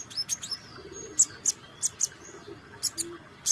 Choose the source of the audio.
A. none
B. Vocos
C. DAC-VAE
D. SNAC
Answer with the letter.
A